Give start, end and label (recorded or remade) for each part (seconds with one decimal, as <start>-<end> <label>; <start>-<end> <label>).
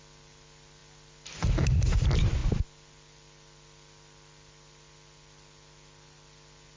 0.0-6.8 recorded